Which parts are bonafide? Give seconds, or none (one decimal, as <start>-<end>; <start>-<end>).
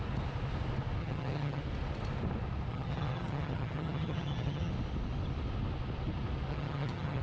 0.0-1.0; 1.6-2.7; 4.7-6.5